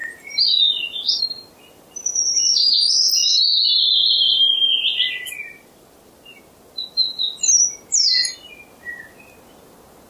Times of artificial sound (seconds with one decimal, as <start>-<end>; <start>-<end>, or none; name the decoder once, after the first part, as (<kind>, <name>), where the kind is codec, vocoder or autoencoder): none